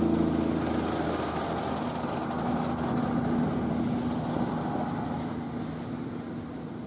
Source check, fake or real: real